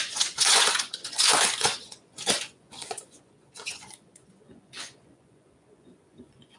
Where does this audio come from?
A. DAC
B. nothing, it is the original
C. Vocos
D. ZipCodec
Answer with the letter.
C